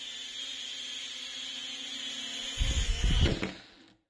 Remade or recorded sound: recorded